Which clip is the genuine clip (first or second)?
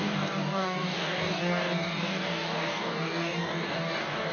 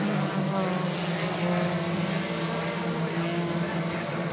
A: second